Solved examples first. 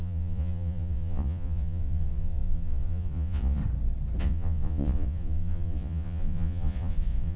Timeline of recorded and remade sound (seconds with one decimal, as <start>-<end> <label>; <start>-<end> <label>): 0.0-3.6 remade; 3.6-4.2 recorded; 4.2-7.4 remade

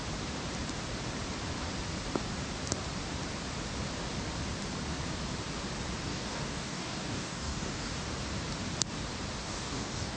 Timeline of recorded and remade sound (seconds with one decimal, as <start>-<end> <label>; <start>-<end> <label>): 0.0-6.1 recorded; 6.1-8.0 remade; 8.0-9.4 recorded; 9.4-10.2 remade

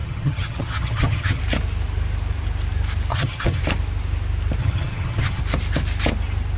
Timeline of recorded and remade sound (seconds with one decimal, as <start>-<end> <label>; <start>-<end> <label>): 0.0-1.4 remade; 1.4-3.1 recorded; 3.1-3.6 remade; 3.6-4.6 recorded; 4.6-5.4 remade; 5.4-6.6 recorded